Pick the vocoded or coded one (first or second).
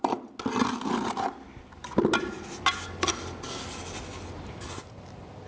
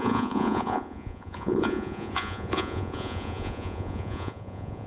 second